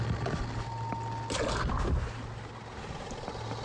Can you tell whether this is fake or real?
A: real